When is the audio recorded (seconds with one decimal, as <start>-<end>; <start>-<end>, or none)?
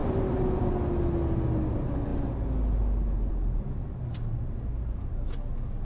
0.6-5.8